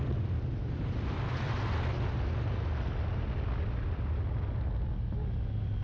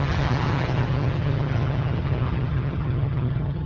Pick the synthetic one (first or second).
second